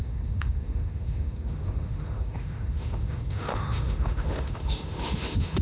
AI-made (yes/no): yes